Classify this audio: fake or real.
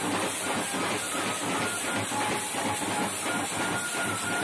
real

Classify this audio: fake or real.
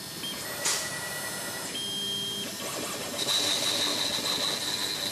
real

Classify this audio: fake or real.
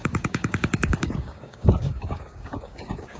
fake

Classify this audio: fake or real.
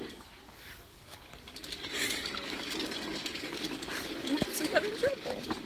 fake